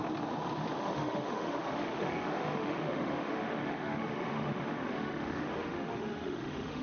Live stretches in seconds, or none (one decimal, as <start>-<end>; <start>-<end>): 0.0-0.8